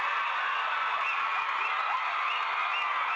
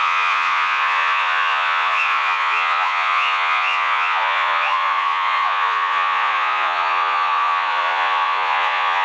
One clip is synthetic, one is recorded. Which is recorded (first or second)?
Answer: first